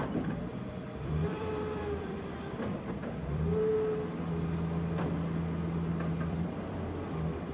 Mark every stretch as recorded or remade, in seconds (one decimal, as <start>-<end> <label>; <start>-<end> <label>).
0.0-3.7 remade; 3.7-6.1 recorded; 6.1-7.5 remade